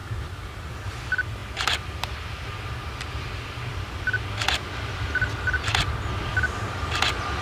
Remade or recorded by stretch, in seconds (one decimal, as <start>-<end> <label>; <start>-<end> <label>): 0.0-0.9 remade; 0.9-7.4 recorded